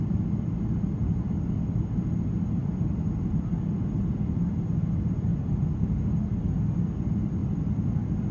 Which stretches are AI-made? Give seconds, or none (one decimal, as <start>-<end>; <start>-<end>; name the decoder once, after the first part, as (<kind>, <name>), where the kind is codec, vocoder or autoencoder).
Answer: 1.0-1.5 (vocoder, BigVGAN v2); 2.6-4.0; 7.4-8.3